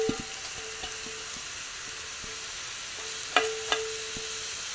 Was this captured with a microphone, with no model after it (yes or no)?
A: yes